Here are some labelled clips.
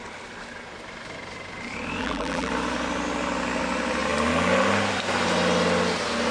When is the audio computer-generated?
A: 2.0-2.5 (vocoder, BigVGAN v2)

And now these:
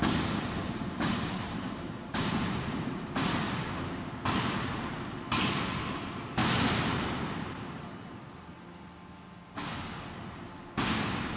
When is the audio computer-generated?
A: 0.6-3.0 (vocoder, BigVGAN v2); 6.4-7.8

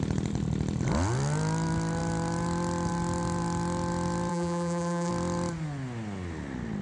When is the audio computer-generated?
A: 4.3-5.1 (vocoder, BigVGAN v2)

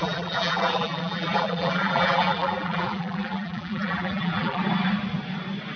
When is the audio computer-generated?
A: 0.0-4.6 (vocoder, BigVGAN v2)

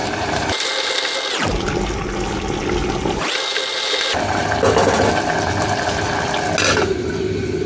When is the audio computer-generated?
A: 0.0-0.5 (vocoder, BigVGAN v2); 2.8-3.3

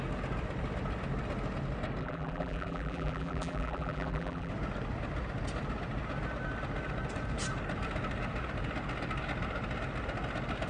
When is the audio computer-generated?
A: 2.0-4.5 (vocoder, BigVGAN v2)

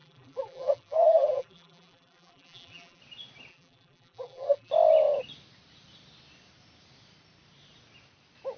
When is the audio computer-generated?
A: 0.0-3.0 (vocoder, BigVGAN v2); 3.5-4.7

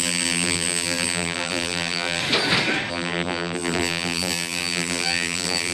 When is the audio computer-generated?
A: 0.0-2.2 (vocoder, BigVGAN v2); 2.9-5.7